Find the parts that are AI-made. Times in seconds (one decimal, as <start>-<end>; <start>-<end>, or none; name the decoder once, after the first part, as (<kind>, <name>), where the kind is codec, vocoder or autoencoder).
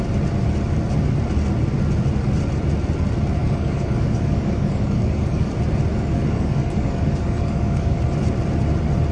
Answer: 3.4-5.5 (codec, DAC); 5.9-8.0